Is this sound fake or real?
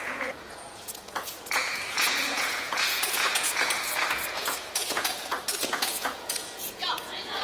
fake